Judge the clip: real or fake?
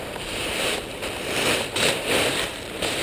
fake